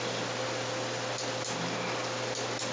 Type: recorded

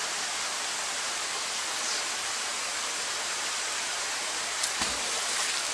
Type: remade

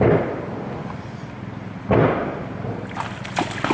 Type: recorded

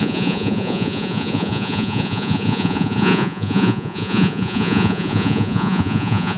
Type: remade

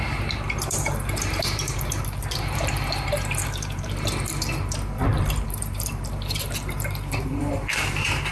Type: remade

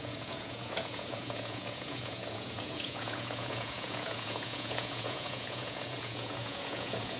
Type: remade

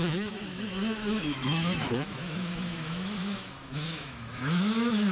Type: remade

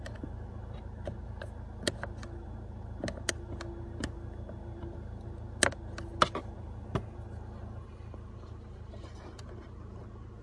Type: recorded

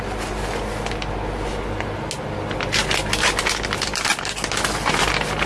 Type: recorded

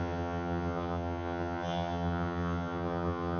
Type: remade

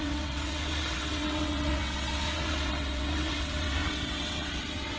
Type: remade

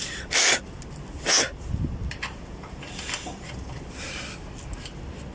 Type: recorded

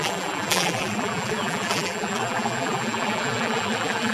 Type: remade